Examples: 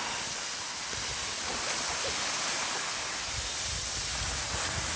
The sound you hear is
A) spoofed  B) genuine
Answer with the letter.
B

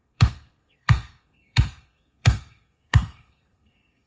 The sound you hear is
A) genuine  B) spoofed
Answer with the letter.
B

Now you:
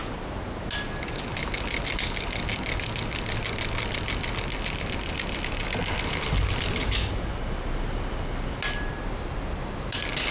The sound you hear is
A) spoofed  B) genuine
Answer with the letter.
B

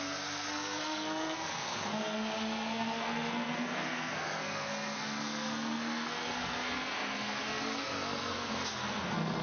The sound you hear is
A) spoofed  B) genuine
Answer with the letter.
A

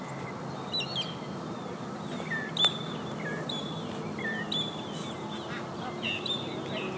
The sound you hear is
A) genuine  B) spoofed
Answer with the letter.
A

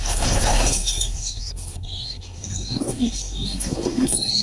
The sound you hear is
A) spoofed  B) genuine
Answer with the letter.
A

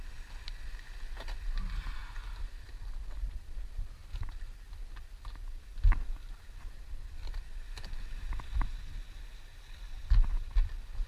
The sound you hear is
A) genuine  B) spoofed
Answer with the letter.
A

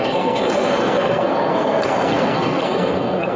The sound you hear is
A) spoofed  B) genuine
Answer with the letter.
A